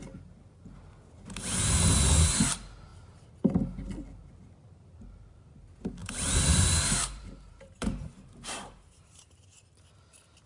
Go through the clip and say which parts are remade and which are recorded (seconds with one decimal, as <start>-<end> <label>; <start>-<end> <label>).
0.0-6.0 recorded; 6.0-9.4 remade; 9.4-10.5 recorded